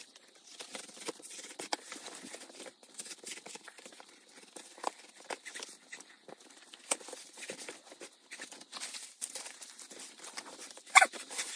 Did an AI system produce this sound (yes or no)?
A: yes